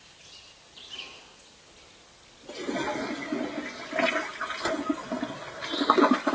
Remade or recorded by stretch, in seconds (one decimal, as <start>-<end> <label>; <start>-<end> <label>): 0.0-6.3 recorded